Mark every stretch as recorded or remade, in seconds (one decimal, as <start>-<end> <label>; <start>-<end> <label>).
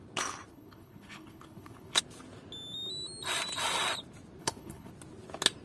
0.0-0.5 recorded; 0.5-2.0 remade; 2.0-4.4 recorded; 4.4-4.9 remade; 4.9-5.6 recorded